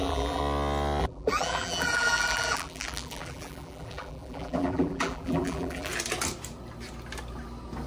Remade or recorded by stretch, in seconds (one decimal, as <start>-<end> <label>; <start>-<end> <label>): 0.0-0.4 remade; 0.4-1.0 recorded; 1.0-5.9 remade; 5.9-7.9 recorded